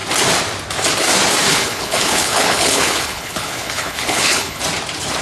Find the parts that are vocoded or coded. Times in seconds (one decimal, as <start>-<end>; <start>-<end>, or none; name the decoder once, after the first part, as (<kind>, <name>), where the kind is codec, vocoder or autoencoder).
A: 1.5-4.6 (codec, HILCodec)